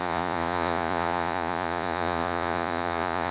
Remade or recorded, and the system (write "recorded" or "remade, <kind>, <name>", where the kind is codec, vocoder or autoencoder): remade, vocoder, Vocos